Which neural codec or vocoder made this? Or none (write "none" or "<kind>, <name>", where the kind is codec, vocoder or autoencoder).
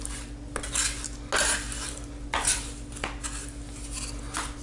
none